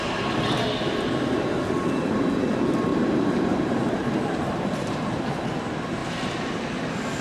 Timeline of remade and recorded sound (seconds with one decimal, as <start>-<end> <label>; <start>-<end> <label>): 0.0-2.9 recorded; 2.9-5.3 remade; 5.3-6.0 recorded; 6.0-6.7 remade; 6.7-7.2 recorded